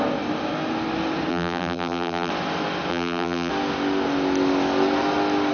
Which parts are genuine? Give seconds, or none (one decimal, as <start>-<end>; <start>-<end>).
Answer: 0.0-1.3; 2.3-2.9; 3.5-5.5